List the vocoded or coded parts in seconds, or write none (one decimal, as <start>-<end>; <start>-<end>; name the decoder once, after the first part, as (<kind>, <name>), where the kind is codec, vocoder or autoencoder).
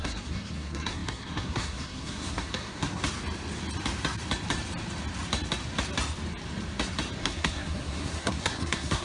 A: 0.0-3.0 (codec, SNAC); 7.2-9.0